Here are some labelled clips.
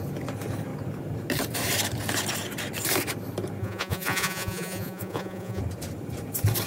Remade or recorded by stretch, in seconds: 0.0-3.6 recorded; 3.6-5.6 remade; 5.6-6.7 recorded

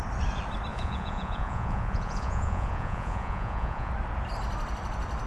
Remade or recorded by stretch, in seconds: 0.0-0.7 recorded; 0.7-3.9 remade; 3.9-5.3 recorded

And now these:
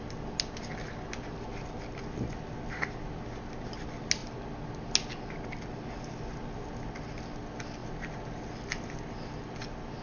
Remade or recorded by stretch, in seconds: 0.0-10.0 recorded

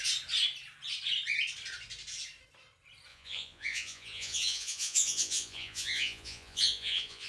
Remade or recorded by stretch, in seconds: 0.0-3.1 recorded; 3.1-7.3 remade

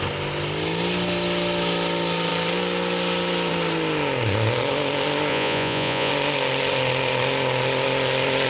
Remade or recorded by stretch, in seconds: 0.0-5.3 recorded; 5.3-6.1 remade; 6.1-8.5 recorded

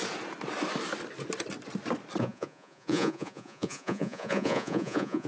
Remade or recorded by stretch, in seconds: 0.0-2.2 recorded; 2.2-5.3 remade